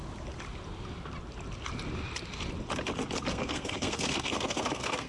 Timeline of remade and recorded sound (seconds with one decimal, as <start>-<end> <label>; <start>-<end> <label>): 0.0-3.3 recorded; 3.3-5.1 remade